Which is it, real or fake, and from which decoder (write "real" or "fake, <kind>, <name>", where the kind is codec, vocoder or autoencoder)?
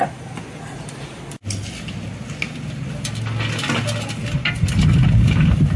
real